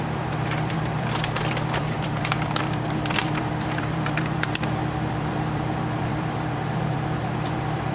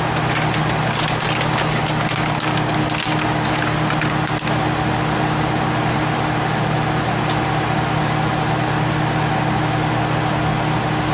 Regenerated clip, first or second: first